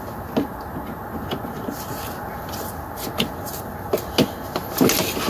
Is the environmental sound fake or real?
real